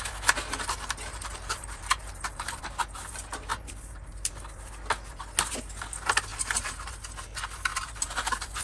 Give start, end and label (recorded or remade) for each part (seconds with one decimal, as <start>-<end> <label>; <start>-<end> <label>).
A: 0.0-1.1 recorded; 1.1-2.6 remade; 2.6-3.5 recorded; 3.5-4.3 remade; 4.3-6.3 recorded; 6.3-6.9 remade; 6.9-7.7 recorded; 7.7-8.6 remade